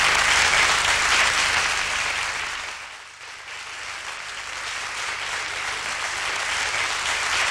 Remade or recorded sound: remade